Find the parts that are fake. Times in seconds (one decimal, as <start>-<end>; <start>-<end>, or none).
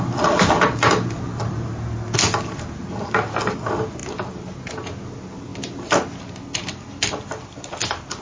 none